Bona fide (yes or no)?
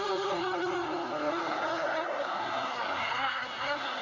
no